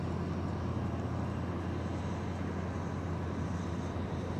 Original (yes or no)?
yes